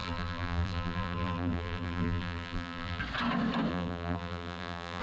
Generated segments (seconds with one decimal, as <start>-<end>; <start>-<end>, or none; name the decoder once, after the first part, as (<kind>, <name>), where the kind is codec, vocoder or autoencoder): 0.0-3.0 (vocoder, BigVGAN v2); 3.7-5.0